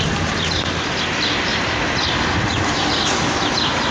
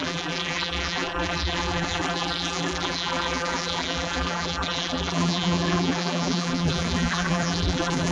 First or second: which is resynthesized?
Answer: second